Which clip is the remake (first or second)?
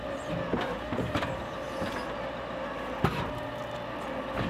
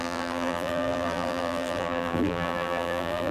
second